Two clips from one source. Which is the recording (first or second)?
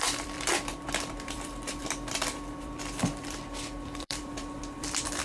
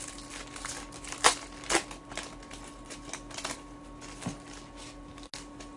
second